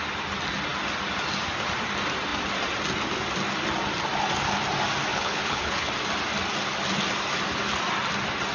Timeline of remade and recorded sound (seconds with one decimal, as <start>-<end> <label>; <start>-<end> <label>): 0.0-5.1 recorded; 5.1-5.9 remade; 5.9-8.5 recorded